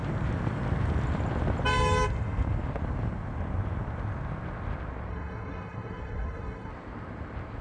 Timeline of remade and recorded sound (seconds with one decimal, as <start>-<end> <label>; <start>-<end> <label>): 0.0-5.1 recorded; 5.1-6.7 remade; 6.7-7.6 recorded